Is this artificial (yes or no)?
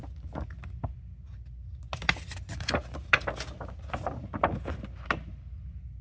no